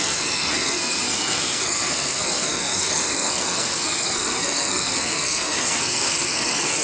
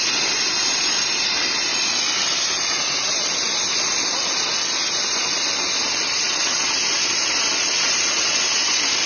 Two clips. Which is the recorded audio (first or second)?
second